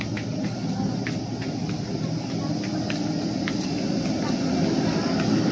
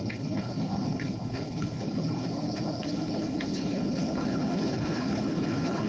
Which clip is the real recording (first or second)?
first